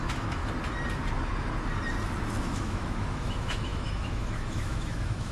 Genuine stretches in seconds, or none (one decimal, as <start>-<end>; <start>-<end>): 0.4-2.4